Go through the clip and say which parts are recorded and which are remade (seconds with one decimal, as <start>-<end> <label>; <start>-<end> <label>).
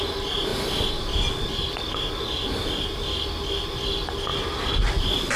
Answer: 0.0-5.4 recorded